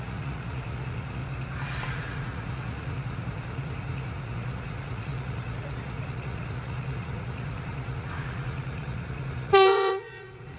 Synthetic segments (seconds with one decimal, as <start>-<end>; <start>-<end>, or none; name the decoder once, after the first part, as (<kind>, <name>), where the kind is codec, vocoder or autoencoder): 0.0-1.2 (vocoder, Vocos); 1.8-10.6